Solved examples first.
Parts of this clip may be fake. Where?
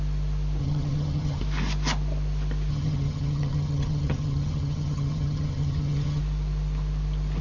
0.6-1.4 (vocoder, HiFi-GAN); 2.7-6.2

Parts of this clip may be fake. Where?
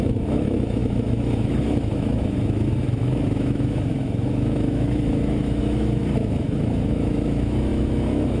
0.0-8.4 (autoencoder, DAC-VAE)